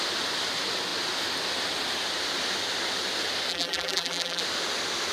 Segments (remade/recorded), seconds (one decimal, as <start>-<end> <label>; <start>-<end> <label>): 0.0-3.5 recorded; 3.5-4.4 remade; 4.4-5.1 recorded